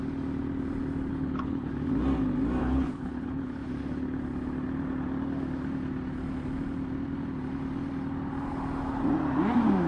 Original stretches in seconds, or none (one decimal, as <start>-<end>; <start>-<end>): 0.0-1.1; 1.7-2.6; 3.7-9.9